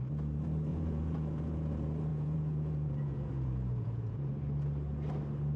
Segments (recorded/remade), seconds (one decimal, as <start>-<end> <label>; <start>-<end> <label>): 0.0-0.7 recorded; 0.7-1.7 remade; 1.7-2.1 recorded; 2.1-4.4 remade; 4.4-5.6 recorded